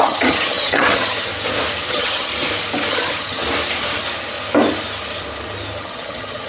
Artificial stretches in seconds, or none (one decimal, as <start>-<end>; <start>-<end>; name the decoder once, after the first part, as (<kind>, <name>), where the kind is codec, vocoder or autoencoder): 0.0-1.3 (vocoder, HiFi-GAN); 1.9-2.3; 2.9-3.4; 5.8-6.5